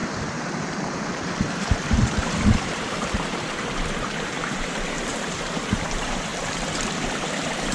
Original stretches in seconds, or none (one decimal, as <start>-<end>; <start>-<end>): 6.3-7.2